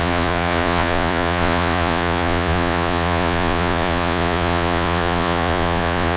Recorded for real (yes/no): no